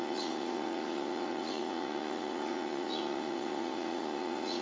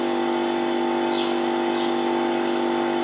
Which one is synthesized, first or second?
first